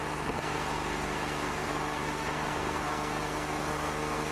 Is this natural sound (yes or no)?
no